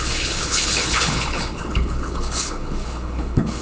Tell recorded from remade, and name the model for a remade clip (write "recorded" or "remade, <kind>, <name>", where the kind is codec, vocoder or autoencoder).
remade, codec, HILCodec